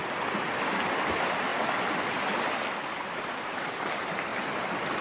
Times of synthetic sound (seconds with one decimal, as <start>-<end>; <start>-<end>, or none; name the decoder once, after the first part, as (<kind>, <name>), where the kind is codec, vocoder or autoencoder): none